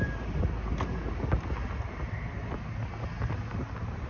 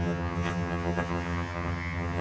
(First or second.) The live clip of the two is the first